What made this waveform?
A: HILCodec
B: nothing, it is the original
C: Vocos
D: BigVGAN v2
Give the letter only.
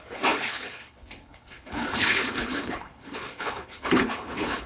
A